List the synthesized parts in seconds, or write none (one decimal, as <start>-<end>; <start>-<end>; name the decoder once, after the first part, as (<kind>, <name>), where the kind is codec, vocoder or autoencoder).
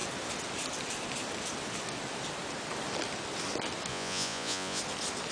3.9-4.8 (vocoder, Vocos)